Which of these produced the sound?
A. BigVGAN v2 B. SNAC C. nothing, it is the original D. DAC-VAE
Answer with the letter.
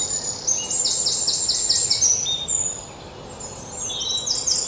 C